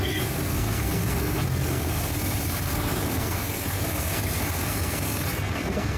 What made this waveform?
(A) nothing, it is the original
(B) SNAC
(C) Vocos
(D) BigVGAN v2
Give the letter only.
B